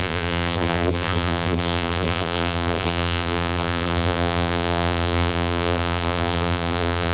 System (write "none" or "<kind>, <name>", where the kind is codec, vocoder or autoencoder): vocoder, BigVGAN v2